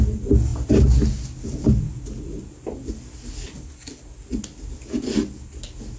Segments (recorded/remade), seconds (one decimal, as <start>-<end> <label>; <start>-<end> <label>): 0.0-6.0 recorded